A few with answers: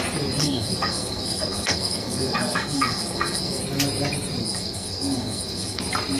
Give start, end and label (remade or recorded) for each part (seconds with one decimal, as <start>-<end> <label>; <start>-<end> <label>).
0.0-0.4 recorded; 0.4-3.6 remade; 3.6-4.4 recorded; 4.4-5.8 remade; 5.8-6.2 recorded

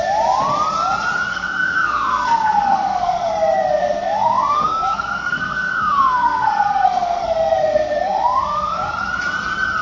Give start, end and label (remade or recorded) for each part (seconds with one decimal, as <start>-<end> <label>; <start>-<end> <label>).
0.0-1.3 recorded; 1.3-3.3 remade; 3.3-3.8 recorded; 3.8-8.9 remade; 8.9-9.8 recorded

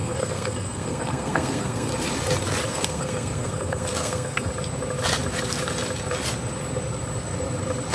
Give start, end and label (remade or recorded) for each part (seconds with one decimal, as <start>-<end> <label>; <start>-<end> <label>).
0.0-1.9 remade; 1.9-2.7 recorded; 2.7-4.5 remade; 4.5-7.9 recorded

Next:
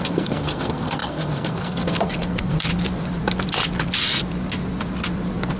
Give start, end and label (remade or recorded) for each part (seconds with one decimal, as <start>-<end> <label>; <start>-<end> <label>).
0.0-2.7 remade; 2.7-5.6 recorded

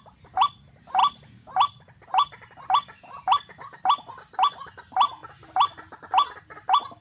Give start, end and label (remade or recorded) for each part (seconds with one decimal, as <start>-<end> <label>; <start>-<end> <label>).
0.0-7.0 recorded

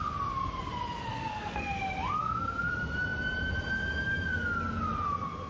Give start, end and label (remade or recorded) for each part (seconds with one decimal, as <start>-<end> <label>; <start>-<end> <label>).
0.0-1.1 recorded; 1.1-1.8 remade; 1.8-2.2 recorded; 2.2-2.7 remade; 2.7-5.5 recorded

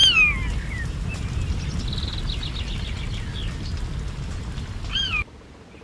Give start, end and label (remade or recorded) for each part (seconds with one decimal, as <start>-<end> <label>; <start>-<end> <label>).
0.0-5.8 recorded